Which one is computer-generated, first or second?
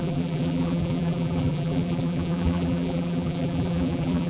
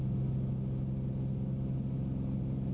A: first